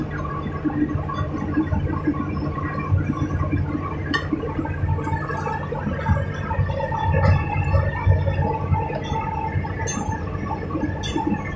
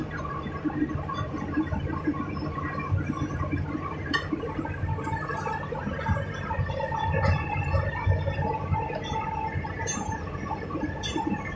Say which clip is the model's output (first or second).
second